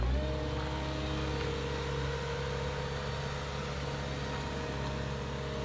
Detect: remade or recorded recorded